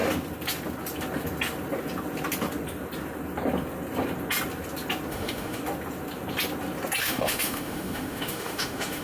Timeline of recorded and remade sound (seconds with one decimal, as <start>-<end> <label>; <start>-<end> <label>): 0.0-5.1 recorded; 5.1-5.6 remade; 5.6-7.0 recorded; 7.0-9.0 remade

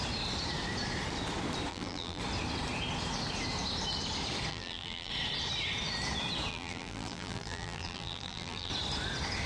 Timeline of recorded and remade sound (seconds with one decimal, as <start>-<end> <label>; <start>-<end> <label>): 0.0-1.7 recorded; 1.7-2.2 remade; 2.2-4.5 recorded; 4.5-5.1 remade; 5.1-6.5 recorded; 6.5-8.7 remade; 8.7-9.5 recorded

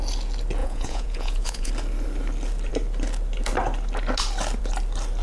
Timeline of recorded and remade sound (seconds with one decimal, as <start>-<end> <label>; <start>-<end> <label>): 0.0-0.6 recorded; 0.6-1.7 remade; 1.7-5.2 recorded

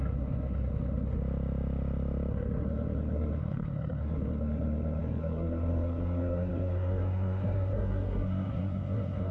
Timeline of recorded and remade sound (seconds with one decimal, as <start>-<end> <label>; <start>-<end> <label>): 0.0-1.2 remade; 1.2-2.3 recorded; 2.3-9.3 remade

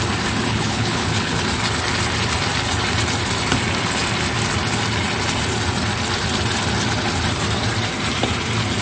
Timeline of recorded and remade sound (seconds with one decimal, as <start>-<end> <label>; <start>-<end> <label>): 0.0-0.5 recorded; 0.5-1.4 remade; 1.4-8.8 recorded

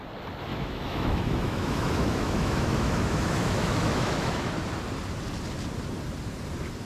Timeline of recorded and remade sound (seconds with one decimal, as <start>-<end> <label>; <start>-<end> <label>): 0.0-0.5 recorded; 0.5-4.5 remade; 4.5-6.9 recorded

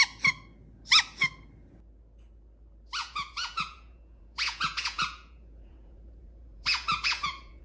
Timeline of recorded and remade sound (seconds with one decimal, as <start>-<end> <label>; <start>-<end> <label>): 0.0-3.0 recorded; 3.0-7.6 remade